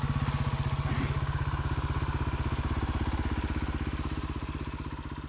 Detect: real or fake real